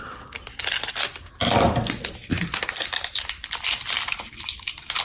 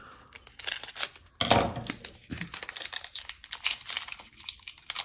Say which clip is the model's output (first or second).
first